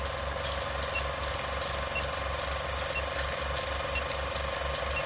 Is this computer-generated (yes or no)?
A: no